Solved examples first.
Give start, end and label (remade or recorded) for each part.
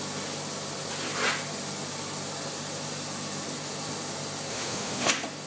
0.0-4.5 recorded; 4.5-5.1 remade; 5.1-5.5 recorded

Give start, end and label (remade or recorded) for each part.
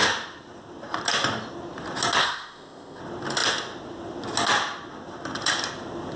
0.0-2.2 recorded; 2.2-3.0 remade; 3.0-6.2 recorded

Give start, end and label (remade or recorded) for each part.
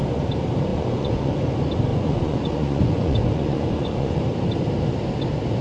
0.0-0.7 recorded; 0.7-1.3 remade; 1.3-1.9 recorded; 1.9-4.2 remade; 4.2-5.6 recorded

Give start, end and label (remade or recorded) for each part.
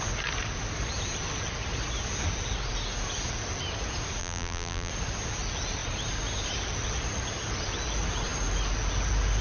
0.0-4.2 recorded; 4.2-4.9 remade; 4.9-9.4 recorded